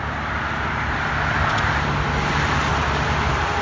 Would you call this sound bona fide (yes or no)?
yes